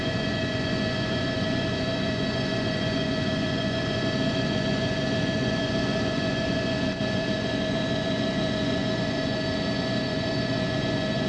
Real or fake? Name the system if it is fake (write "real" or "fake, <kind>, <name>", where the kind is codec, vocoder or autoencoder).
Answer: fake, vocoder, Vocos